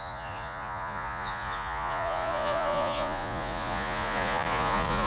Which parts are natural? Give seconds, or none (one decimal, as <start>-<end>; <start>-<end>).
none